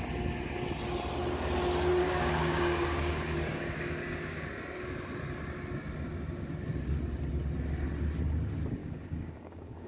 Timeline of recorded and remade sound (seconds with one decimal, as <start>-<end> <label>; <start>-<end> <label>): 0.0-2.0 recorded; 2.0-4.5 remade; 4.5-8.8 recorded; 8.8-9.9 remade